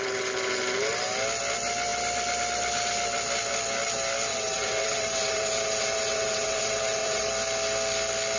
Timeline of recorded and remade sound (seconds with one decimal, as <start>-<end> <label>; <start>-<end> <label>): 0.0-4.3 recorded; 4.3-7.3 remade; 7.3-8.4 recorded

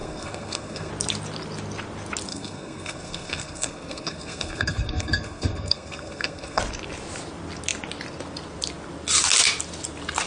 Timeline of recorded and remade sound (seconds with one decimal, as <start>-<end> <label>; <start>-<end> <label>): 0.0-0.9 remade; 0.9-2.3 recorded; 2.3-6.6 remade; 6.6-10.3 recorded

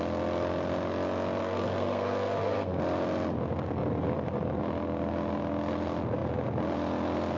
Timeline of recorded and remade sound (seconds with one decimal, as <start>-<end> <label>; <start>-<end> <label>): 0.0-1.4 recorded; 1.4-2.8 remade; 2.8-7.4 recorded